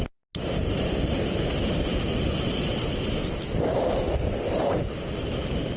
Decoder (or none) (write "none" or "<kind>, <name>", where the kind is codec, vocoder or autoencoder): none